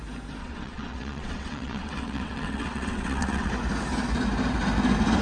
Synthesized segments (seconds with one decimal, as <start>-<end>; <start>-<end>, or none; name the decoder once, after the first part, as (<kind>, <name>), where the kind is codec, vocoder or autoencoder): 0.4-3.5 (vocoder, WaveNeXt)